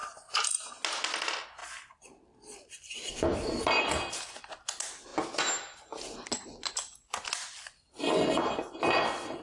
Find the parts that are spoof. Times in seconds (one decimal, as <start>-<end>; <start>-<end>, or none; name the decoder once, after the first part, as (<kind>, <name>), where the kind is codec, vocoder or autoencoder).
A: 0.0-0.7 (vocoder, BigVGAN v2)